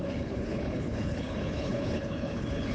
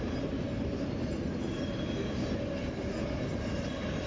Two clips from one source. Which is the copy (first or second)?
first